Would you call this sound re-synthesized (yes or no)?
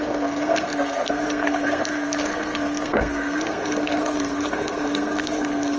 yes